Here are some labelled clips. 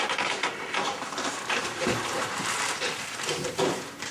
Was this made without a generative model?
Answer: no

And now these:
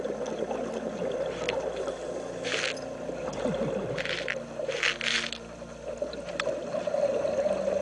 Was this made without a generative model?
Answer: yes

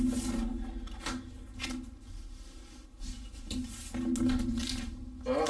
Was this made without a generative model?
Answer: yes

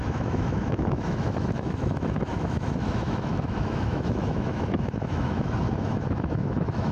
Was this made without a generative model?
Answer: no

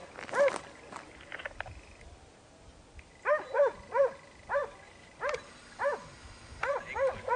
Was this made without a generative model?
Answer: yes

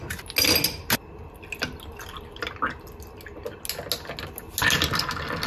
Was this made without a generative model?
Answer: yes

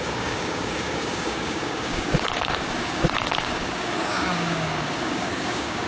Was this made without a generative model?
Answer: no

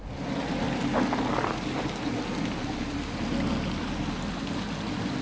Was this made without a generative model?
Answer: yes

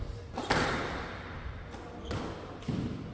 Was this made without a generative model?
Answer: yes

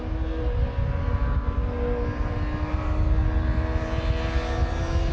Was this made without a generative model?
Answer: yes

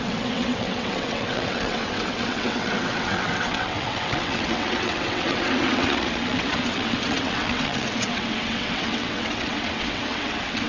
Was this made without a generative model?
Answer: no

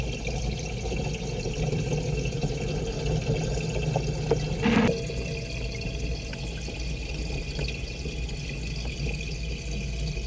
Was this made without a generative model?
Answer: yes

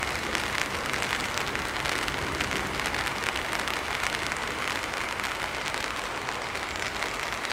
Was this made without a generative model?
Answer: yes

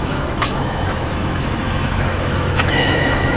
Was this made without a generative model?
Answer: no